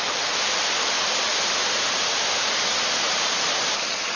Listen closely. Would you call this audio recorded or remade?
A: recorded